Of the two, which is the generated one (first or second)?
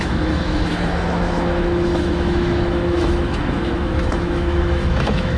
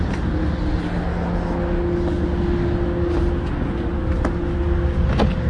first